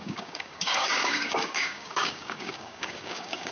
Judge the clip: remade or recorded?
remade